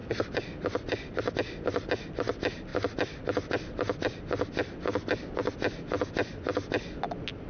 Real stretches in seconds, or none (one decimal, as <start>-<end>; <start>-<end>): 0.0-7.5